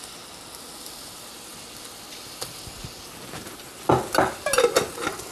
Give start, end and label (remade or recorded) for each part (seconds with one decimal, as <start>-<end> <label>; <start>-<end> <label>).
0.0-5.3 recorded